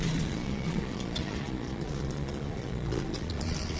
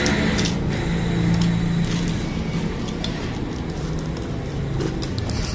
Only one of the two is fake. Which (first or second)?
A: first